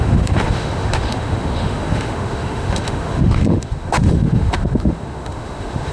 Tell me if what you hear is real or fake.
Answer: fake